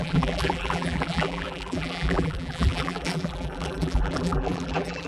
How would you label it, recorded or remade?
remade